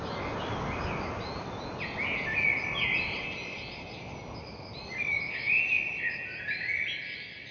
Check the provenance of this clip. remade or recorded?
recorded